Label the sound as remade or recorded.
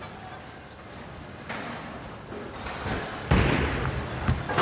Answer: recorded